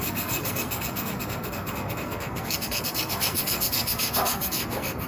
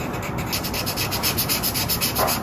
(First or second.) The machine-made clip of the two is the first